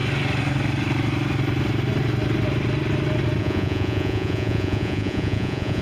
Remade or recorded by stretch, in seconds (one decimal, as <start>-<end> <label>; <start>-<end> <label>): 0.0-3.4 recorded; 3.4-5.8 remade